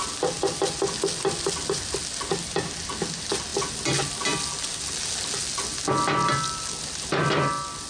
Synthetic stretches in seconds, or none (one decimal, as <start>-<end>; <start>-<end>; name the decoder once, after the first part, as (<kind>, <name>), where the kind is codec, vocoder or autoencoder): none